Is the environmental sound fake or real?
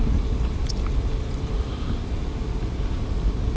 real